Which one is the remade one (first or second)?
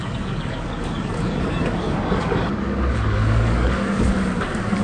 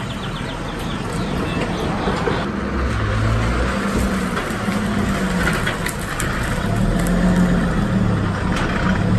first